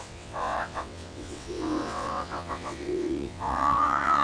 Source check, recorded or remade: remade